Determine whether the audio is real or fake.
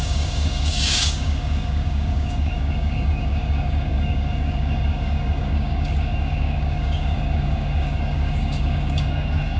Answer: fake